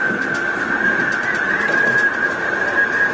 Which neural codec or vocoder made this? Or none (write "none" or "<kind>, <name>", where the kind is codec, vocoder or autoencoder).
none